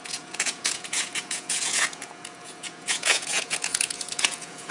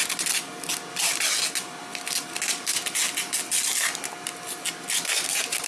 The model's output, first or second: first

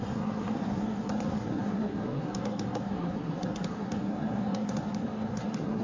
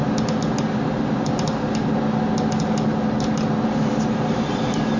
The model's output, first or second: first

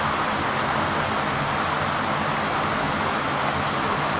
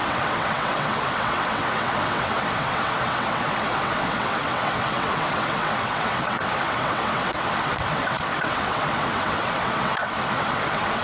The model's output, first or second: second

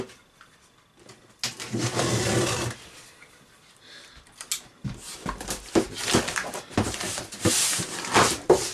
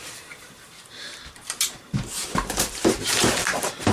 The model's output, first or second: second